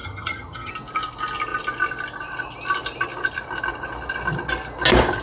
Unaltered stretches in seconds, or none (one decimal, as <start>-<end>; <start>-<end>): 0.7-5.2